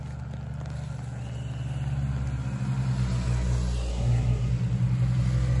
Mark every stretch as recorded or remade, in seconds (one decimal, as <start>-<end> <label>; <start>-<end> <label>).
0.0-3.9 recorded; 3.9-4.5 remade; 4.5-5.6 recorded